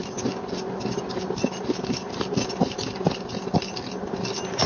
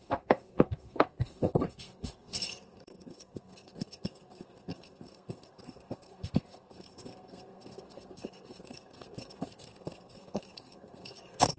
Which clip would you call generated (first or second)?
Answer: second